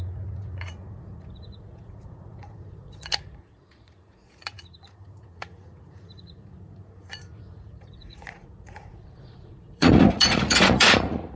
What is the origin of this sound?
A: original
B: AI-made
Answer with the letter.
B